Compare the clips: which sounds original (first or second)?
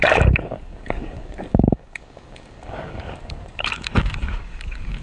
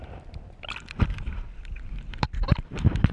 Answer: second